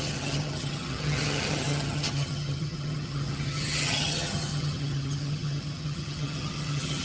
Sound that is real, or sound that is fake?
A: fake